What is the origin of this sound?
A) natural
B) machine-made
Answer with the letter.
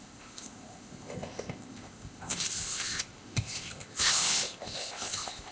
B